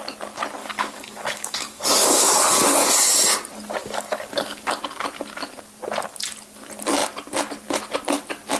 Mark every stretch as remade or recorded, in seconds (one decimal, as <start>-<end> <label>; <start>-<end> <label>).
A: 0.0-0.6 recorded; 0.6-2.9 remade; 2.9-3.8 recorded; 3.8-4.8 remade; 4.8-8.6 recorded